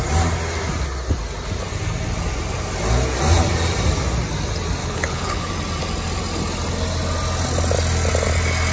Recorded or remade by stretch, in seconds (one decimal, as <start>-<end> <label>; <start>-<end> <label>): 0.0-4.8 recorded; 4.8-5.5 remade; 5.5-8.7 recorded